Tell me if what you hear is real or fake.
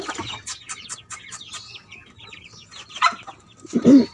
real